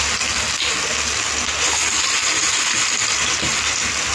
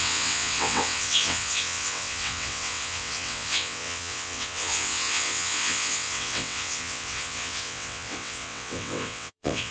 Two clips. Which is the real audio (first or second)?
first